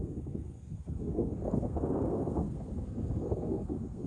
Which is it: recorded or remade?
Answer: remade